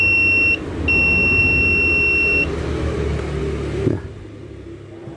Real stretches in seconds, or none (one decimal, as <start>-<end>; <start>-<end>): 0.0-5.2